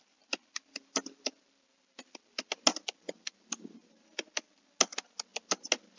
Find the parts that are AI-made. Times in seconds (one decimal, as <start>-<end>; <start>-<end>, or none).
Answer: none